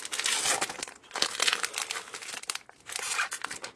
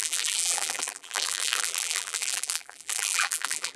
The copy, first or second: second